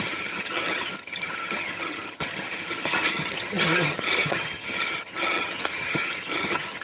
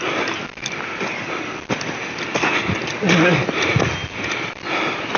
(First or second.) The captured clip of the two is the second